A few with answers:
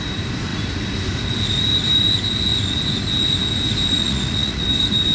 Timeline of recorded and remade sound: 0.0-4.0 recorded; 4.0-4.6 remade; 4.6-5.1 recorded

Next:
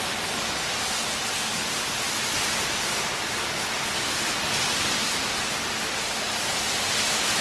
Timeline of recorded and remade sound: 0.0-7.4 recorded

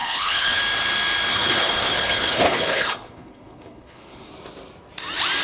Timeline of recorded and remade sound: 0.0-0.6 remade; 0.6-1.3 recorded; 1.3-4.3 remade; 4.3-5.4 recorded

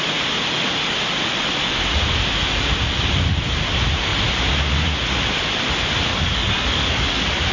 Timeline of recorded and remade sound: 0.0-6.1 recorded; 6.1-7.5 remade

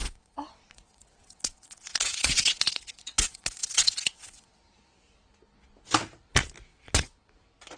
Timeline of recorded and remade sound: 0.0-4.6 remade; 4.6-6.7 recorded; 6.7-7.3 remade; 7.3-7.8 recorded

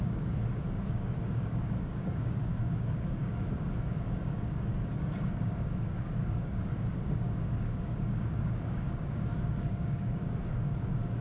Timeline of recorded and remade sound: 0.0-11.2 remade

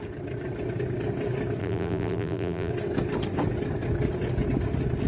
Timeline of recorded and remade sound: 0.0-1.6 recorded; 1.6-2.7 remade; 2.7-5.1 recorded